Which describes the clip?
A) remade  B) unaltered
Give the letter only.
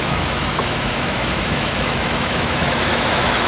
A